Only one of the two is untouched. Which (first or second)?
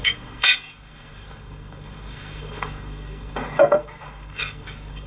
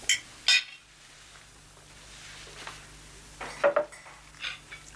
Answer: second